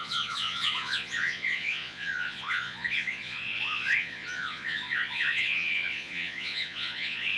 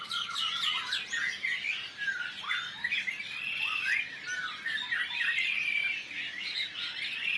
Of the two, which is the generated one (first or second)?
first